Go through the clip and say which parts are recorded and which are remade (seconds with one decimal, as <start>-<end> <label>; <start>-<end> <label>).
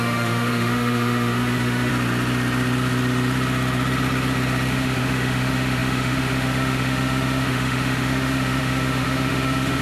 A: 0.0-1.9 remade; 1.9-4.7 recorded; 4.7-9.8 remade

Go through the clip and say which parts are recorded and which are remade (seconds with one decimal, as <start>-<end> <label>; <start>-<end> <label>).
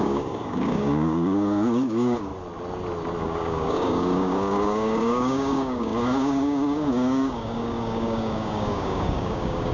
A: 0.0-2.3 remade; 2.3-3.2 recorded; 3.2-9.7 remade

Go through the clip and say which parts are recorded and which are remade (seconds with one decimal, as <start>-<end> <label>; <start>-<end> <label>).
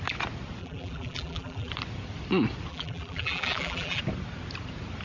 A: 0.0-0.6 recorded; 0.6-1.7 remade; 1.7-2.7 recorded; 2.7-4.0 remade; 4.0-5.0 recorded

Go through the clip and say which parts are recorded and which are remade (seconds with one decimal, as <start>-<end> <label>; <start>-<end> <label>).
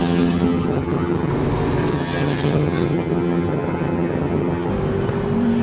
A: 0.0-1.3 remade; 1.3-1.9 recorded; 1.9-4.7 remade; 4.7-5.6 recorded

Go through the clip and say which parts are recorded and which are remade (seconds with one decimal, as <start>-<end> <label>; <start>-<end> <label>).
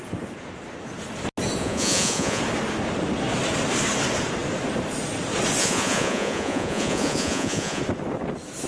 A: 0.0-1.6 recorded; 1.6-2.4 remade; 2.4-5.6 recorded; 5.6-7.8 remade; 7.8-8.7 recorded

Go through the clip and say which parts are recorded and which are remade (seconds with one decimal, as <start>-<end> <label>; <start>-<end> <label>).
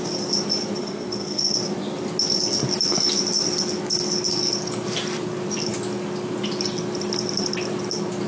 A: 0.0-0.8 recorded; 0.8-1.6 remade; 1.6-8.3 recorded